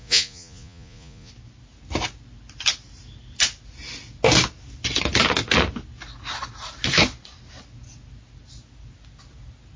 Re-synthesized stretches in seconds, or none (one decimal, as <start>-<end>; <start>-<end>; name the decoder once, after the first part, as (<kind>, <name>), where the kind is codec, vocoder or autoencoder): 0.0-1.3 (vocoder, Vocos)